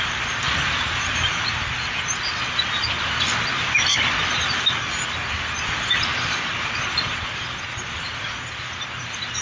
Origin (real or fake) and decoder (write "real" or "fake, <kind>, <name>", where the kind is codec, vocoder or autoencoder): fake, vocoder, BigVGAN v2